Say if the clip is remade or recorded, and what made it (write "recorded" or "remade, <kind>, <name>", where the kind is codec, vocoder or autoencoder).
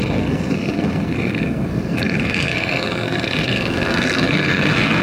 remade, codec, SNAC